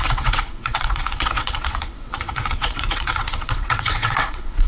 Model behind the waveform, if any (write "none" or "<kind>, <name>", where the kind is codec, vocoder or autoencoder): vocoder, WaveNeXt